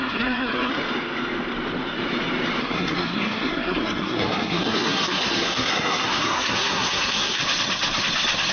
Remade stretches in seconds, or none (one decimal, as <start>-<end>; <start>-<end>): 0.0-0.7; 2.6-7.4